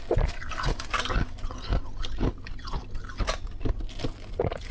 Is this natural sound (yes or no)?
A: yes